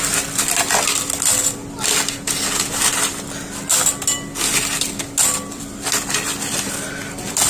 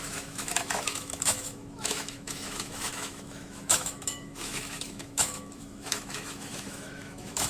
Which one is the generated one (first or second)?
second